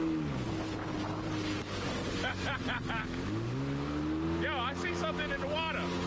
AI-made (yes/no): no